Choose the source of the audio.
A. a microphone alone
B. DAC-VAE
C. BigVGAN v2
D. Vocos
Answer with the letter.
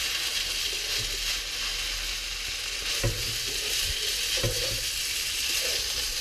A